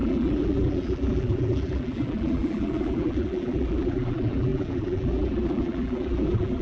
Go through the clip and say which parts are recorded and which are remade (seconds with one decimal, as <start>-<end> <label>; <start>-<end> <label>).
0.0-6.6 remade

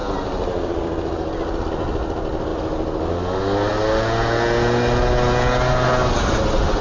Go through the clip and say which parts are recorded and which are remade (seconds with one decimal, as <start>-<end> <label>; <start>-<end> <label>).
0.0-6.8 recorded

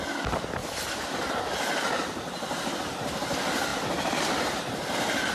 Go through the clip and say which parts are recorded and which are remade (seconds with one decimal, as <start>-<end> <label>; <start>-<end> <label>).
0.0-5.3 recorded

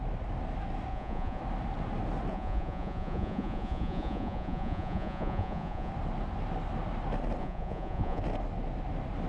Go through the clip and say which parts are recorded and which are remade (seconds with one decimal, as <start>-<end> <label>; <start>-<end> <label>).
0.0-0.9 recorded; 0.9-1.4 remade; 1.4-2.3 recorded; 2.3-5.9 remade; 5.9-7.4 recorded; 7.4-8.2 remade; 8.2-9.3 recorded

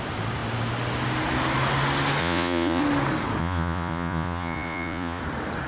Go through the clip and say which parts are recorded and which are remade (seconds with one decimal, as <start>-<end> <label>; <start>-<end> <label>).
0.0-2.2 recorded; 2.2-2.8 remade; 2.8-3.4 recorded; 3.4-5.2 remade; 5.2-5.7 recorded